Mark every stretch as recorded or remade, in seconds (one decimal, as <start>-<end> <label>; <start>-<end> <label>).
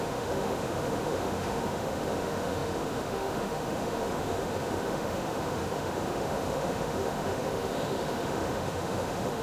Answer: 0.0-9.4 remade